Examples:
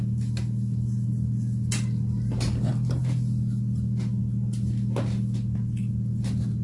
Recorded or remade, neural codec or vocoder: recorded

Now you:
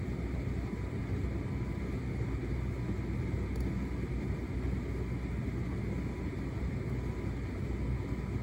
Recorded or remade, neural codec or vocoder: recorded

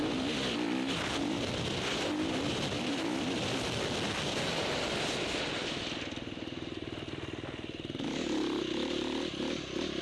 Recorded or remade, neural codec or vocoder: recorded